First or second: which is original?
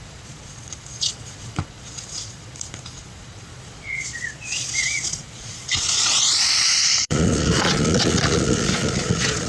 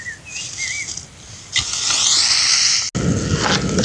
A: second